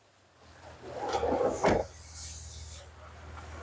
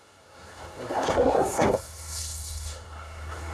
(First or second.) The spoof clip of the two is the second